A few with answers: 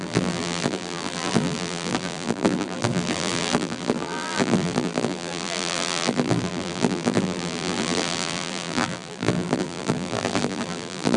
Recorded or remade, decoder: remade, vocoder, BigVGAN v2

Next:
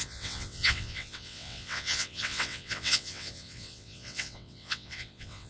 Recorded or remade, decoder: remade, vocoder, WaveNeXt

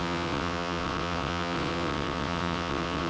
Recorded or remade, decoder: remade, vocoder, WaveNeXt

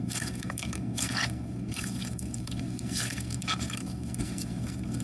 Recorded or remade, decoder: remade, codec, SNAC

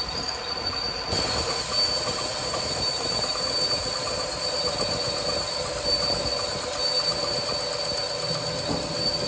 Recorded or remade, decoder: recorded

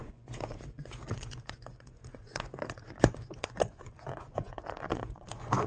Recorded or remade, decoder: remade, vocoder, Vocos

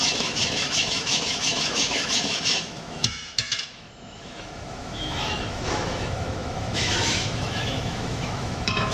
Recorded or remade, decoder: remade, autoencoder, DAC-VAE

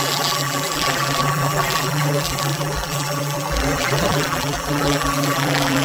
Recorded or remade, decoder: remade, vocoder, BigVGAN v2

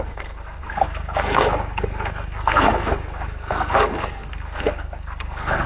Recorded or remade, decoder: remade, codec, SNAC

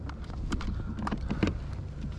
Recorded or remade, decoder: recorded